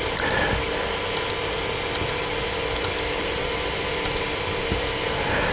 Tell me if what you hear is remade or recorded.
recorded